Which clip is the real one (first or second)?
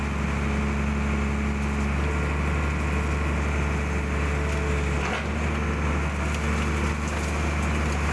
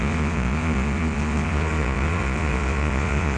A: first